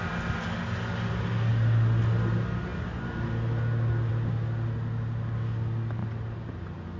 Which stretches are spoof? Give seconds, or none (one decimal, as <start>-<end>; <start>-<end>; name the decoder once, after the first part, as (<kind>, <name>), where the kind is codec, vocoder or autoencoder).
none